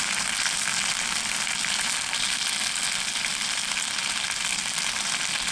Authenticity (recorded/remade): recorded